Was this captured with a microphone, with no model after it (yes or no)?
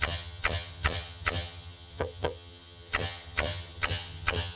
no